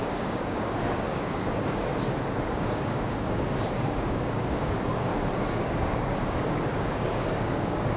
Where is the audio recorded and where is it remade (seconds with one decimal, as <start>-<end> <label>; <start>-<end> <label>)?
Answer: 0.0-1.9 remade; 1.9-2.4 recorded; 2.4-5.1 remade; 5.1-5.6 recorded; 5.6-8.0 remade